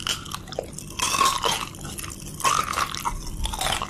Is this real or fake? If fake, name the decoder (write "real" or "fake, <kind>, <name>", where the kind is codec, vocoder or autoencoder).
real